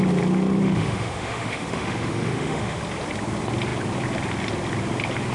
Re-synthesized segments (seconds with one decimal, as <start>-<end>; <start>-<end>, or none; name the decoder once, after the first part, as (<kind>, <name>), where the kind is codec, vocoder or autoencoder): 0.6-2.8 (autoencoder, DAC-VAE)